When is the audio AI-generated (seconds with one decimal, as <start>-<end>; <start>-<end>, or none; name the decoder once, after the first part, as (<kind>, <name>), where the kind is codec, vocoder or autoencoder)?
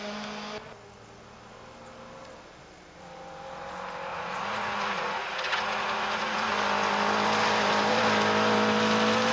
4.1-6.5 (vocoder, Vocos)